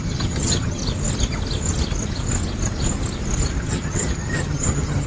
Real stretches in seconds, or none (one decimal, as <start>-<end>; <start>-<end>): 0.8-3.6